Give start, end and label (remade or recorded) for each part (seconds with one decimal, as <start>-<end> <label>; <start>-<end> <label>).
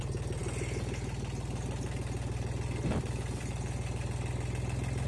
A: 0.0-5.1 recorded